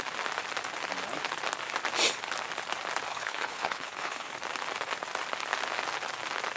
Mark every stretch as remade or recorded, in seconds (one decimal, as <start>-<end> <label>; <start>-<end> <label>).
0.0-3.1 recorded; 3.1-4.3 remade; 4.3-6.6 recorded